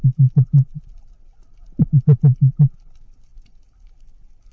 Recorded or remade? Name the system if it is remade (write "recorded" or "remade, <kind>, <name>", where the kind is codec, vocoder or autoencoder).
recorded